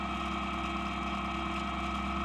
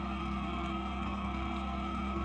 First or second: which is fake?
second